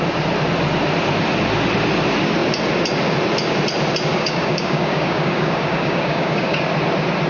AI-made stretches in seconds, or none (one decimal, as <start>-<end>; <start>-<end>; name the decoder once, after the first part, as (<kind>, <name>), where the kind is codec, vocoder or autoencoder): 4.1-6.6 (codec, DAC)